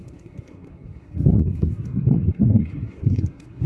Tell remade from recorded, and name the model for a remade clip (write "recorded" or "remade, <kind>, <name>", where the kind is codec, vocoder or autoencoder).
remade, codec, SNAC